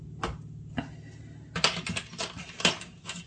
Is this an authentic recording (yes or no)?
yes